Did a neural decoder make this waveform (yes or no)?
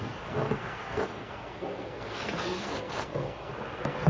yes